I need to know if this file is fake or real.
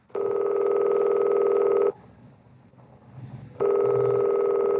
real